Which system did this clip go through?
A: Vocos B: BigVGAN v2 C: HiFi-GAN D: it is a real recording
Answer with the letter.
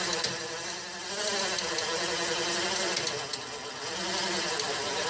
D